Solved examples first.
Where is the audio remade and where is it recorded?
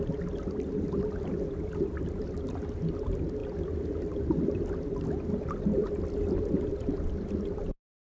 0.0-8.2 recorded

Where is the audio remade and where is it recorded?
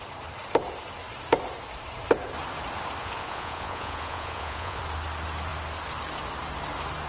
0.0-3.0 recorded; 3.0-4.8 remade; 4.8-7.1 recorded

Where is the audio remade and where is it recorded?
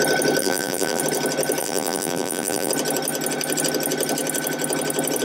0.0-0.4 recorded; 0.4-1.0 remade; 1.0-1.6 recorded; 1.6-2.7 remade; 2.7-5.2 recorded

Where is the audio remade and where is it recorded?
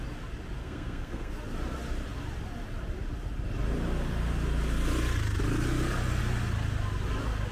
0.0-0.6 recorded; 0.6-1.3 remade; 1.3-7.5 recorded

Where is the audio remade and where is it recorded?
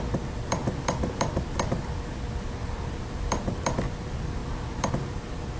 0.0-5.6 remade